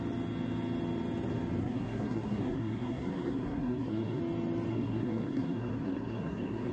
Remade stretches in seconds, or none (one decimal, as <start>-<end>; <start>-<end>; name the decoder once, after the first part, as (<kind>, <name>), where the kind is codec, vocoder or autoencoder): 1.6-4.2 (codec, SNAC); 4.7-6.7